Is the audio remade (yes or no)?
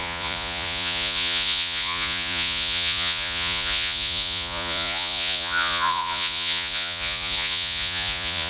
yes